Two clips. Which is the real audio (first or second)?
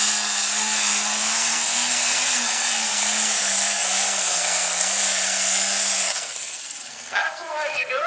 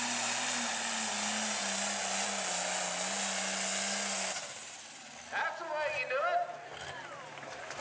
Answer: second